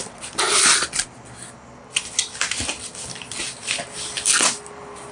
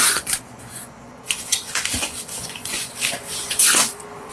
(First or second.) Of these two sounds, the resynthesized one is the second